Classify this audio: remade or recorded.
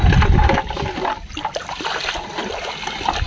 recorded